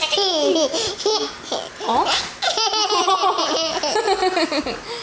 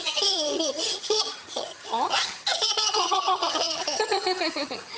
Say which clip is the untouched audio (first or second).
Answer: first